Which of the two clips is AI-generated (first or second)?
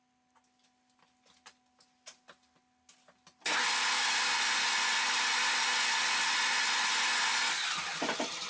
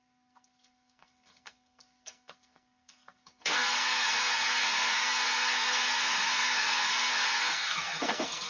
second